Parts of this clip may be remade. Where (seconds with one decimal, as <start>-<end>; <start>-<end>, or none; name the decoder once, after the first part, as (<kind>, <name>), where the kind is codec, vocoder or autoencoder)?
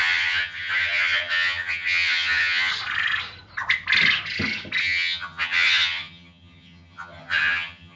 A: 0.0-2.7 (vocoder, HiFi-GAN); 4.8-8.0